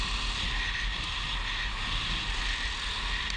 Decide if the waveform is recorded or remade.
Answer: recorded